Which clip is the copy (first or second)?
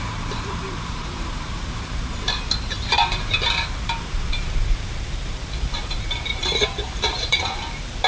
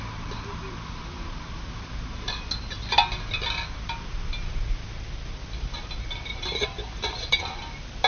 first